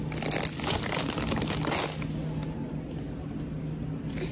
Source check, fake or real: real